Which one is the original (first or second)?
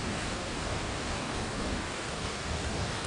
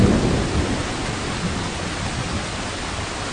second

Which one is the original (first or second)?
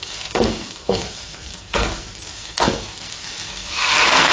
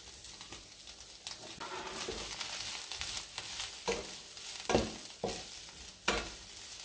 second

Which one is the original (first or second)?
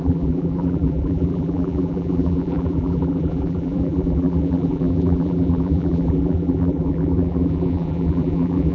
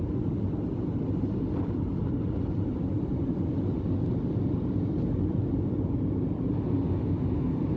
second